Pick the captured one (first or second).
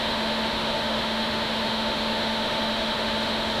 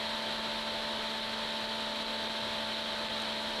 second